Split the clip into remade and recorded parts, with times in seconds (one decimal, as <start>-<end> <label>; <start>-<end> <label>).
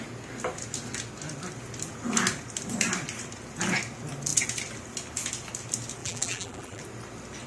0.0-6.0 recorded; 6.0-6.8 remade; 6.8-7.5 recorded